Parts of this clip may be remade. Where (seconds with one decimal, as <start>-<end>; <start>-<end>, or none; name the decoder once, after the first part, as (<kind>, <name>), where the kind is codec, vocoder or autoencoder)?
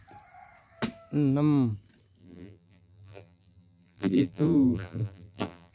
2.2-5.7 (vocoder, BigVGAN v2)